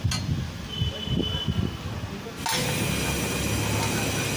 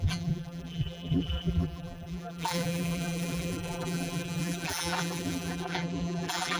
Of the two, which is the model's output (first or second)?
second